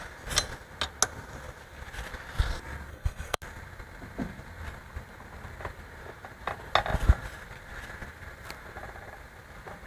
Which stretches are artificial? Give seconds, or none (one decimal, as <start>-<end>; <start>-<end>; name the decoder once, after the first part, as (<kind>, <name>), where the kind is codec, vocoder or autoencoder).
2.9-3.4 (codec, SNAC)